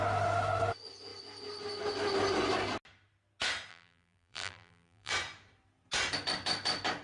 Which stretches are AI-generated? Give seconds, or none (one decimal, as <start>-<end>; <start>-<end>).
3.7-5.1